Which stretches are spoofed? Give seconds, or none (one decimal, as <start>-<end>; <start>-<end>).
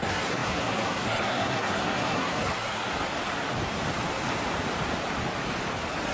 0.0-2.9